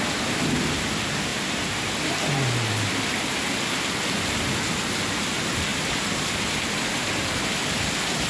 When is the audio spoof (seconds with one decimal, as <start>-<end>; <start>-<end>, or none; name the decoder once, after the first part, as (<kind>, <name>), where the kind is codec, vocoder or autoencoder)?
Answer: 1.3-1.9 (vocoder, BigVGAN v2); 5.7-6.7